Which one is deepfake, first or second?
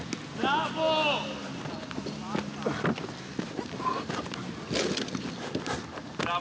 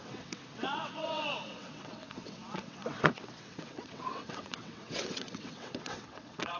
second